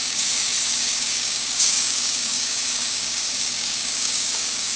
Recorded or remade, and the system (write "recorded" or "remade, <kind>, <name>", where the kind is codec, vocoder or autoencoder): remade, codec, DAC